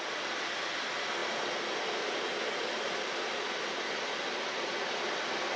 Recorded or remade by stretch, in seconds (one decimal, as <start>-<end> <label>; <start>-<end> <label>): 0.0-5.6 recorded